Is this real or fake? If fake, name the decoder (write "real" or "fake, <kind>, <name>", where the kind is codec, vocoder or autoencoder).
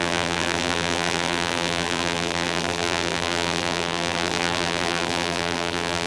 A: fake, vocoder, BigVGAN v2